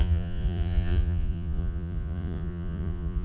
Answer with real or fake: fake